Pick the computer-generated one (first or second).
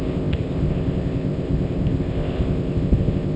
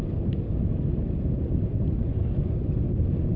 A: first